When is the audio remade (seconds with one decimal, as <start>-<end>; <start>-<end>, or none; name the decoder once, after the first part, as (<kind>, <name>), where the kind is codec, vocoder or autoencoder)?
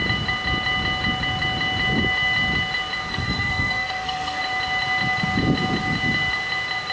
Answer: 3.1-4.4 (codec, SNAC)